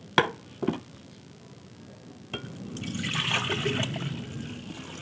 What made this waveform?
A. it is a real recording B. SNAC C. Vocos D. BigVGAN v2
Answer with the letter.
A